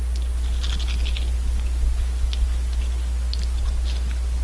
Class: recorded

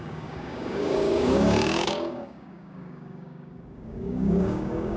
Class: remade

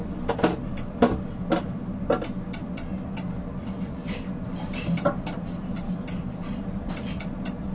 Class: remade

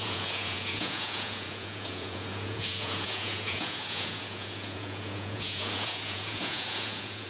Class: remade